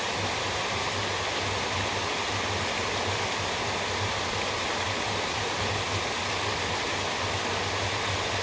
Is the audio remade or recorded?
recorded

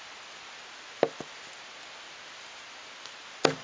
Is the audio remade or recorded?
recorded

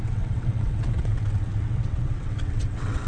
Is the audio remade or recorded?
remade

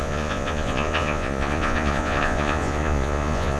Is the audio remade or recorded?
remade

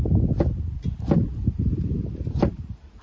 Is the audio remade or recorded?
recorded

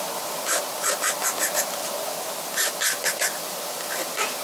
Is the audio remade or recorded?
recorded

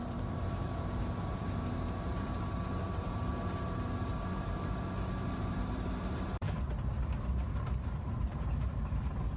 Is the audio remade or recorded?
remade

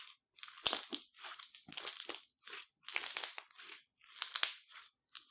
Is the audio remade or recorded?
recorded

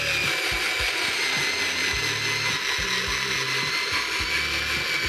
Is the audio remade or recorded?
recorded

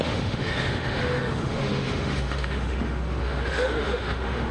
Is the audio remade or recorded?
remade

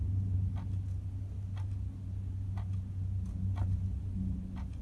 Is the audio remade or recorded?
recorded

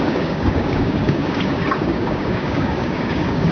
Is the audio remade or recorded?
remade